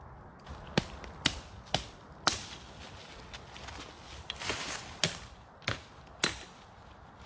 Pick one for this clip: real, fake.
real